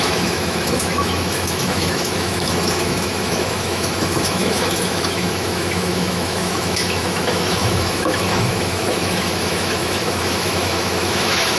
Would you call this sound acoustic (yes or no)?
no